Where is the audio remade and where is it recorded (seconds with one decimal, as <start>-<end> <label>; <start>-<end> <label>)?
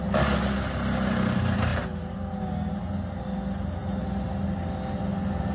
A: 0.0-5.5 recorded